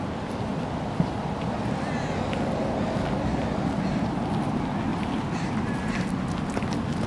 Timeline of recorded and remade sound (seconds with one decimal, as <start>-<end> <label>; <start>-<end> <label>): 0.0-4.9 recorded; 4.9-5.7 remade; 5.7-7.1 recorded